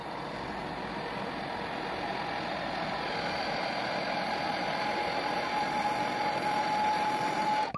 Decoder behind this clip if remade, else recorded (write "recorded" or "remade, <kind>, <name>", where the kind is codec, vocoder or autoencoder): recorded